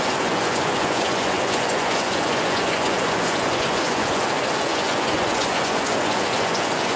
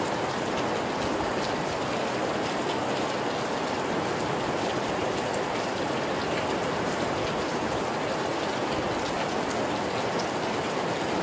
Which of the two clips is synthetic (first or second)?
first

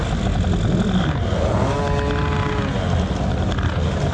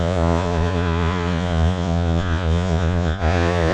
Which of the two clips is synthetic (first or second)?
second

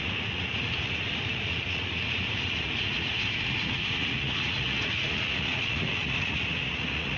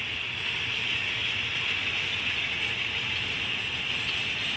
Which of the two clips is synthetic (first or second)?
first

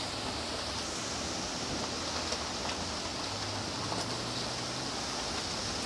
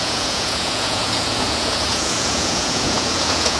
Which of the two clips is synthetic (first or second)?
second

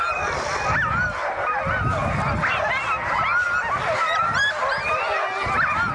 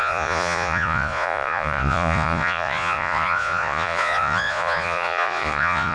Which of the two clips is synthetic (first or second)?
second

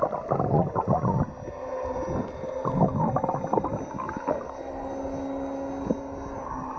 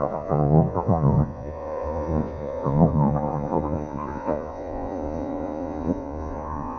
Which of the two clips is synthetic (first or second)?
second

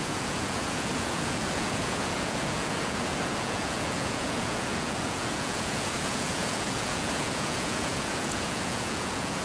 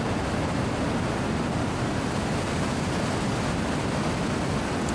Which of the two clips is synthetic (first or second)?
first